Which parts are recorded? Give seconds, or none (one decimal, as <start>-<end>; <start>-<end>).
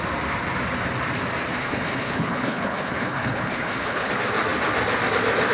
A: 0.0-1.6; 4.1-5.5